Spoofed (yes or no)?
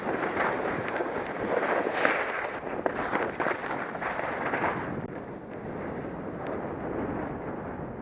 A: no